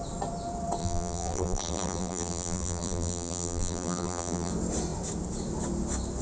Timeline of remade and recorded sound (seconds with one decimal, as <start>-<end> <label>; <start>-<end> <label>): 0.0-0.8 recorded; 0.8-4.5 remade; 4.5-6.2 recorded